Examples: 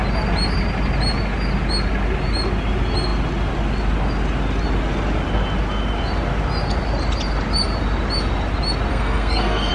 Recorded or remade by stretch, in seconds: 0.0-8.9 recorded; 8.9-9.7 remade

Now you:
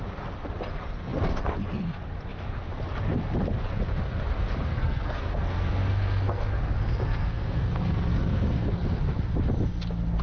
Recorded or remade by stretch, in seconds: 0.0-4.7 recorded; 4.7-9.1 remade; 9.1-10.2 recorded